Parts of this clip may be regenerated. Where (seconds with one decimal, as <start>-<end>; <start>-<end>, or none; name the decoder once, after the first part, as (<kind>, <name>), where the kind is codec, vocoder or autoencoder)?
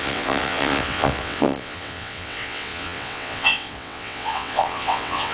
0.0-5.3 (vocoder, WaveNeXt)